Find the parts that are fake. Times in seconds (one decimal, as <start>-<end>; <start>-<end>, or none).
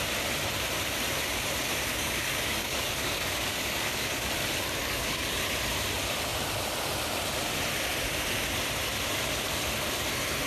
1.9-4.3; 4.8-5.4